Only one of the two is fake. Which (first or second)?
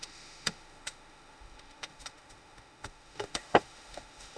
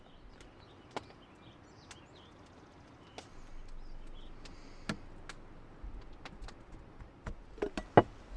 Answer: first